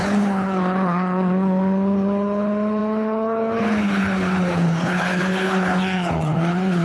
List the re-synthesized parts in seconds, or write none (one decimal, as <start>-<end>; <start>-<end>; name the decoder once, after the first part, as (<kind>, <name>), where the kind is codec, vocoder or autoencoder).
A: 0.0-6.8 (codec, HILCodec)

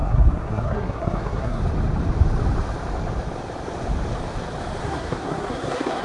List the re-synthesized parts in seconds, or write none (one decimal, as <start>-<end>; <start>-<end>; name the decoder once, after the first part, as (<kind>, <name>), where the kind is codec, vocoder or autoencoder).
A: 0.0-1.6 (codec, SNAC); 4.8-6.0